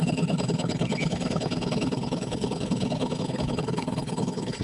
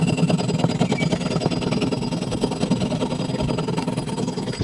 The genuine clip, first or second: second